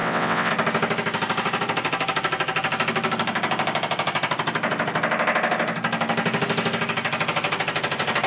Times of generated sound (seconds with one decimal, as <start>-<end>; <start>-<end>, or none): 0.0-0.5